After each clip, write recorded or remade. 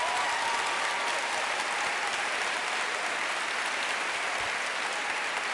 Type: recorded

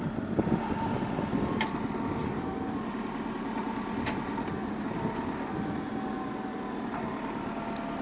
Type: recorded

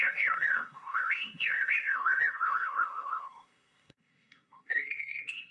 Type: remade